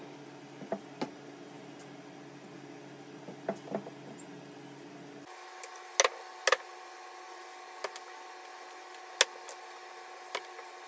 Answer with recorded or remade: recorded